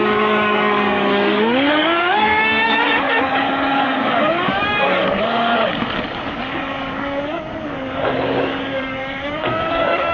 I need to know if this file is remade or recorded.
remade